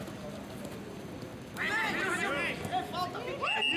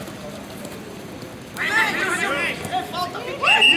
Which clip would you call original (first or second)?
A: first